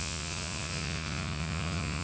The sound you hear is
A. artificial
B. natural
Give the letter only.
A